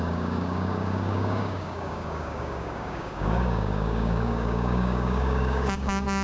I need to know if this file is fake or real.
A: fake